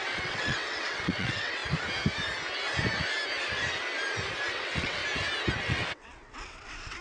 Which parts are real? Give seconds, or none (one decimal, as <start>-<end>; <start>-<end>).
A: 1.6-4.5; 5.0-5.6